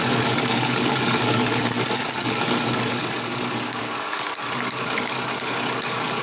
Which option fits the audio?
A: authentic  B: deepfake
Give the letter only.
B